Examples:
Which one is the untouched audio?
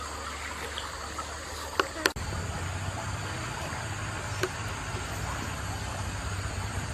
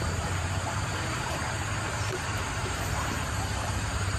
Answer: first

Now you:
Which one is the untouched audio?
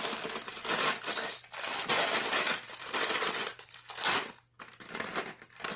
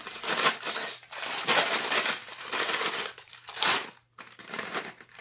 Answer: first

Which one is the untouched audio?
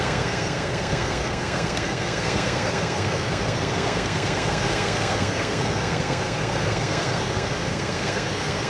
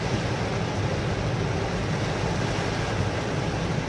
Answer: second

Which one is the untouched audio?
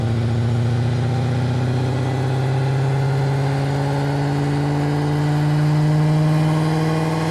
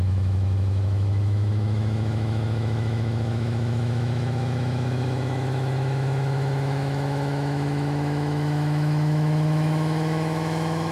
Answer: first